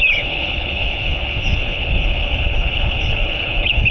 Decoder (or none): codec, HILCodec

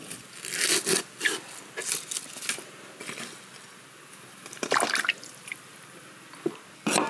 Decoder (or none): none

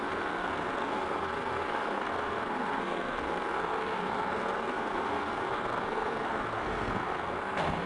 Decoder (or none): codec, SNAC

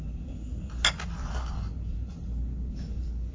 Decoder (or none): none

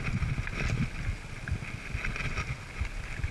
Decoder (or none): none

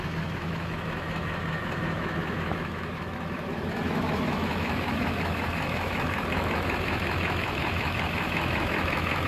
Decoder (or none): autoencoder, DAC-VAE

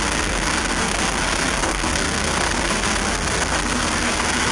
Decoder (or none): codec, SNAC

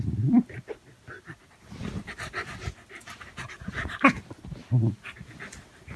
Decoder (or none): none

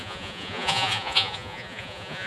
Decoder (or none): vocoder, Vocos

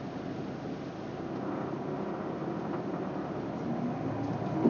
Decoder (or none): none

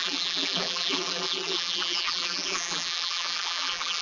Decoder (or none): vocoder, BigVGAN v2